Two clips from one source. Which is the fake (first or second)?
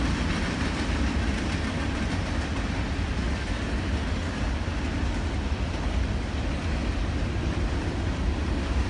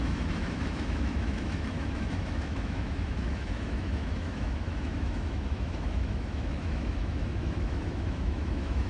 second